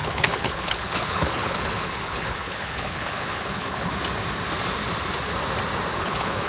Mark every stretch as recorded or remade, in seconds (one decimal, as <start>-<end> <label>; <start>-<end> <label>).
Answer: 0.0-3.9 remade; 3.9-5.9 recorded; 5.9-6.5 remade